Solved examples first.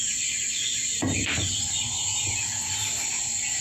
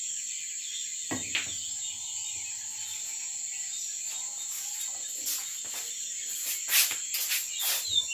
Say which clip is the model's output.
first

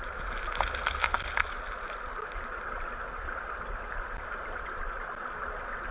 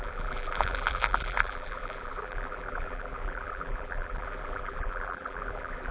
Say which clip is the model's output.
second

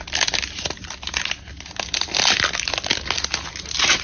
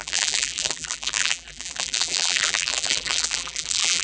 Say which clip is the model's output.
second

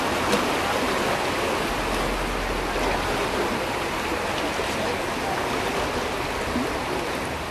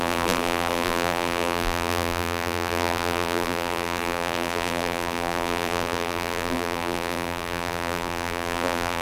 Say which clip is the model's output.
second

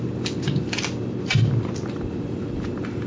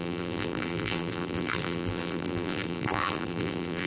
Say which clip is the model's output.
second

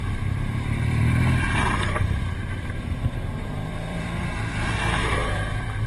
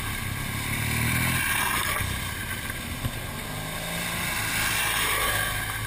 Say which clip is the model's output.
first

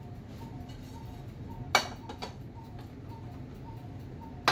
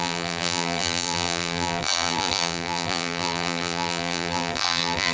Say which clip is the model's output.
second